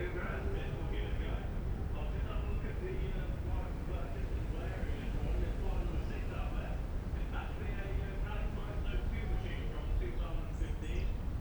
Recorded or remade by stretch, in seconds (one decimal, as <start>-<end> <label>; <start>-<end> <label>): 0.0-8.6 remade; 8.6-10.7 recorded; 10.7-11.4 remade